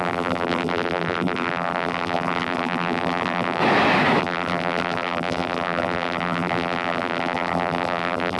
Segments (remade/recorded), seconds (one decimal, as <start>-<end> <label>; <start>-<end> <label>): 0.0-3.6 remade; 3.6-4.2 recorded; 4.2-8.4 remade